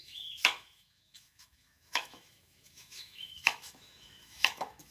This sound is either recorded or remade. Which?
remade